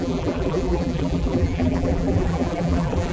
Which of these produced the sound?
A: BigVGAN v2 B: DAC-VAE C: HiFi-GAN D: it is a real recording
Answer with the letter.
A